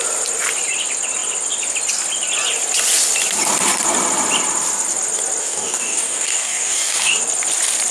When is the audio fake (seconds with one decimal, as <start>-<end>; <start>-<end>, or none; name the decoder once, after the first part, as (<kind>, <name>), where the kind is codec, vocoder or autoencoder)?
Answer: 5.4-7.2 (codec, DAC)